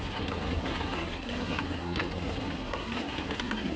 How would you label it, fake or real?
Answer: fake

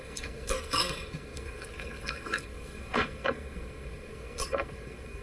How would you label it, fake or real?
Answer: fake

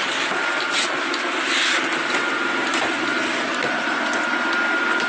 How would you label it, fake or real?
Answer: real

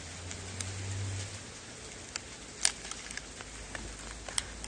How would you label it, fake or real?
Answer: real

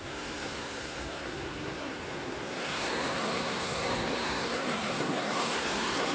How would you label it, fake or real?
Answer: fake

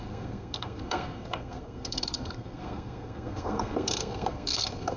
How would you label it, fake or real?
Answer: fake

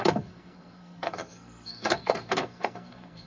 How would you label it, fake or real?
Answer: fake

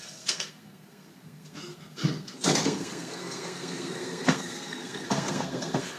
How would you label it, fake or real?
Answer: fake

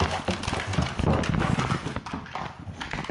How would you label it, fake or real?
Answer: real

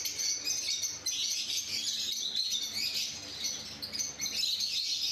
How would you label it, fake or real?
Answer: real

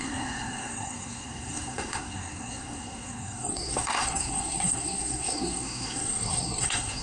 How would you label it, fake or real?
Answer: fake